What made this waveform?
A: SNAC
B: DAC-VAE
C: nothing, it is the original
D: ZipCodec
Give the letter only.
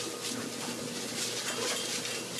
C